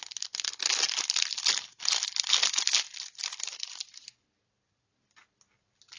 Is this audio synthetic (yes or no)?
no